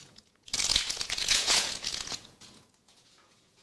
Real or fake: fake